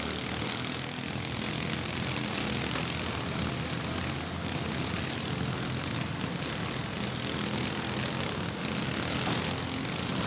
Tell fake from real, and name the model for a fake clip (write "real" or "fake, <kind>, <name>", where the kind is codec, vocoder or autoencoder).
real